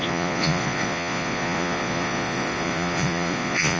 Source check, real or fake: fake